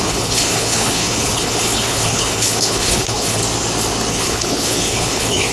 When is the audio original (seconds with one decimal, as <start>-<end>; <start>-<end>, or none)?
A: 3.4-4.1